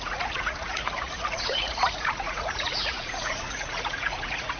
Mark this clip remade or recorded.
remade